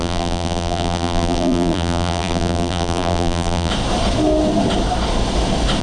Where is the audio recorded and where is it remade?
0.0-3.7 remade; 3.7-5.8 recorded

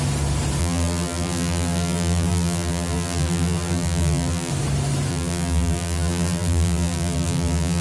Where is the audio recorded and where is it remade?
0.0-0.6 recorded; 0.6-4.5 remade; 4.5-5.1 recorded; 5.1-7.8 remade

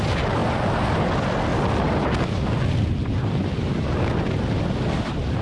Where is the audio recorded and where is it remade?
0.0-0.4 recorded; 0.4-1.0 remade; 1.0-1.5 recorded; 1.5-4.7 remade; 4.7-5.4 recorded